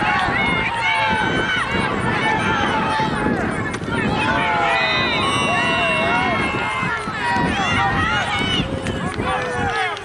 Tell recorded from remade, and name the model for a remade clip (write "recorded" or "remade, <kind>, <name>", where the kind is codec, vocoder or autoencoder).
recorded